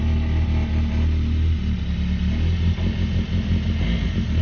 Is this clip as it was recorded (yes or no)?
yes